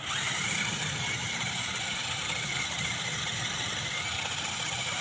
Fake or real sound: real